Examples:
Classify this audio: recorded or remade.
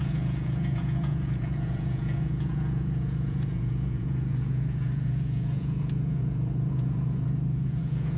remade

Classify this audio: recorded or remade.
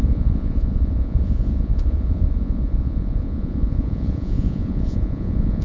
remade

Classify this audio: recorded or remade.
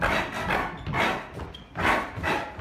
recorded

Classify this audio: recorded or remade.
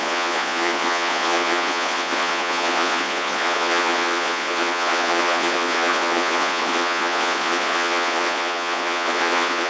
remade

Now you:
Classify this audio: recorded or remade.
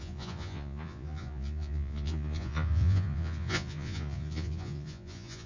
remade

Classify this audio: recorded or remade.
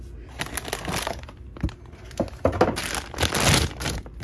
recorded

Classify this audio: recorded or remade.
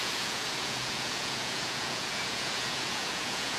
remade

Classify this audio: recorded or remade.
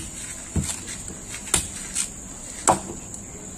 recorded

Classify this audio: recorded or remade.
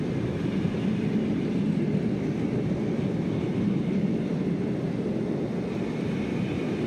recorded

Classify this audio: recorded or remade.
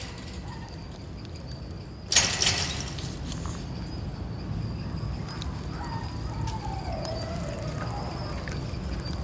recorded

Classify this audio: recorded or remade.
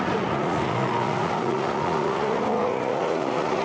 remade